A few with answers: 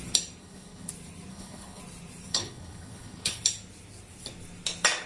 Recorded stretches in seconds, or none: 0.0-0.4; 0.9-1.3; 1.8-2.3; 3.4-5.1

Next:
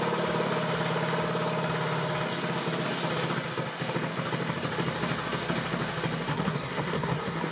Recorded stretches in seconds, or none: 0.0-6.3